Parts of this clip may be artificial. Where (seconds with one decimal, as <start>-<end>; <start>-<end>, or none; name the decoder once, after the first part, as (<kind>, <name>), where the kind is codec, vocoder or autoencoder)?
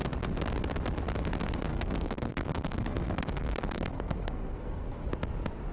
1.7-5.1 (codec, SNAC)